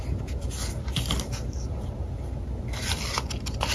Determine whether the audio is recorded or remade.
recorded